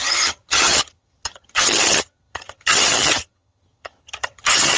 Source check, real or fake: fake